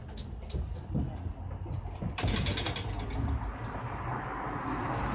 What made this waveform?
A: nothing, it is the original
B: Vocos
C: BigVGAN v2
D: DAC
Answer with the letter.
A